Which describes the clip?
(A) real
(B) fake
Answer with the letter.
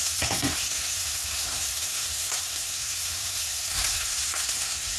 B